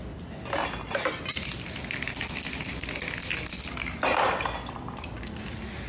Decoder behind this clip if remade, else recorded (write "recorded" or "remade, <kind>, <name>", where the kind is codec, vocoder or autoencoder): recorded